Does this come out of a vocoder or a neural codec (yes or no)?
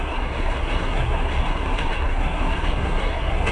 yes